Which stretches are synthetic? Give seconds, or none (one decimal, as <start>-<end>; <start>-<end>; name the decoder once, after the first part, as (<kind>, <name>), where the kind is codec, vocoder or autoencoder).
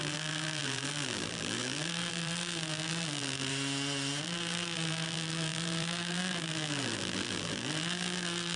0.0-3.5 (vocoder, BigVGAN v2); 4.2-8.6